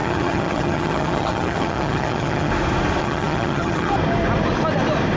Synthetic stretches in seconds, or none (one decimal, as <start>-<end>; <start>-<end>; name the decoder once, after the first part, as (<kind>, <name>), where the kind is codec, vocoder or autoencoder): 0.0-2.5 (vocoder, HiFi-GAN); 3.0-3.9